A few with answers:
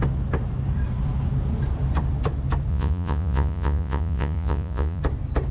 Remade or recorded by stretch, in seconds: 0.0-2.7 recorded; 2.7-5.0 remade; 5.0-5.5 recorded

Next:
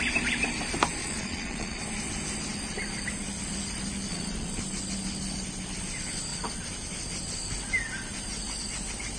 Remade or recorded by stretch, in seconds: 0.0-1.0 recorded; 1.0-1.8 remade; 1.8-4.1 recorded; 4.1-4.6 remade; 4.6-9.2 recorded